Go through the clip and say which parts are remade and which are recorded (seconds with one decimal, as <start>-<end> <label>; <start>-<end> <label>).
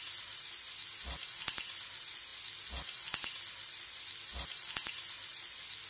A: 0.0-5.9 recorded